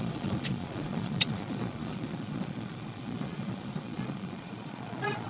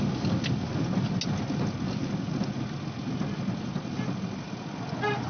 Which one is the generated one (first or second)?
first